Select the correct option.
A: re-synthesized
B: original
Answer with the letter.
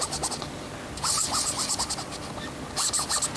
B